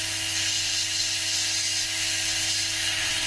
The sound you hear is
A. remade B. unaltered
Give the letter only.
B